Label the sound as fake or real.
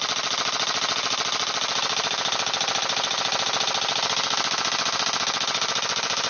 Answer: real